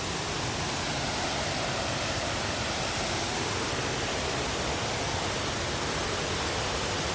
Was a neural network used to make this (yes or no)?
no